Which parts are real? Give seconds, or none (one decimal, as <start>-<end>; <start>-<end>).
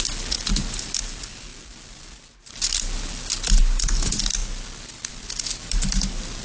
0.0-6.4